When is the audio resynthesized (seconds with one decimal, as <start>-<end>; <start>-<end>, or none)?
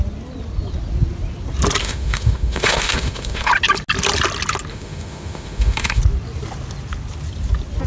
1.8-3.5; 4.7-6.0